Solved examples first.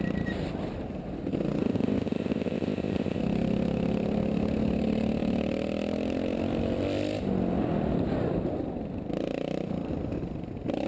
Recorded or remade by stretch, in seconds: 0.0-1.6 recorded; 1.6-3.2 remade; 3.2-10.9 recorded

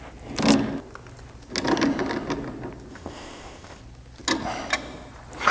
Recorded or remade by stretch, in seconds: 0.0-2.9 recorded; 2.9-3.8 remade; 3.8-5.5 recorded

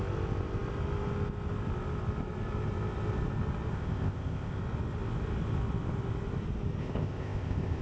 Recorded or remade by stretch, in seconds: 0.0-3.7 recorded; 3.7-4.6 remade; 4.6-6.8 recorded; 6.8-7.8 remade

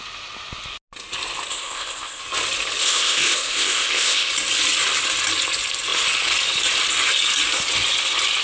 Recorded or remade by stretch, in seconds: 0.0-1.5 recorded; 1.5-2.2 remade; 2.2-2.8 recorded; 2.8-4.3 remade; 4.3-8.4 recorded

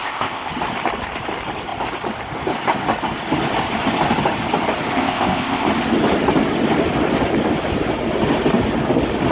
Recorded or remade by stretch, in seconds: 0.0-0.5 remade; 0.5-4.9 recorded; 4.9-5.7 remade; 5.7-9.3 recorded

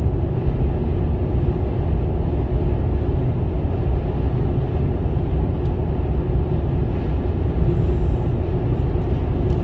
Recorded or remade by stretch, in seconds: 0.0-9.6 recorded

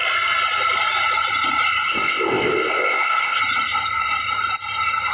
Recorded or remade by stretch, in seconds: 0.0-1.9 recorded; 1.9-3.4 remade; 3.4-5.1 recorded